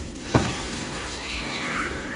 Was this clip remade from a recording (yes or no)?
yes